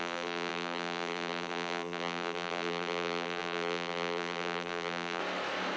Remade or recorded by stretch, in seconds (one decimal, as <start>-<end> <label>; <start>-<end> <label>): 0.0-5.2 remade; 5.2-5.8 recorded